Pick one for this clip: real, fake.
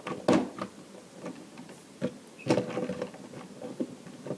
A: real